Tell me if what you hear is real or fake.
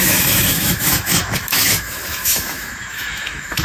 fake